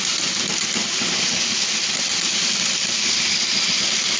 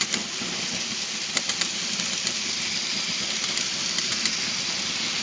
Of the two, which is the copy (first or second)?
second